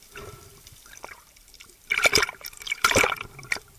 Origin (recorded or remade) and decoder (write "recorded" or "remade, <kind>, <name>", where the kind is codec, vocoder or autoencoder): remade, vocoder, BigVGAN v2